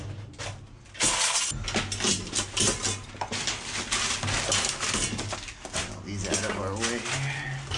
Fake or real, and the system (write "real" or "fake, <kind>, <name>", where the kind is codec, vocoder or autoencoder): real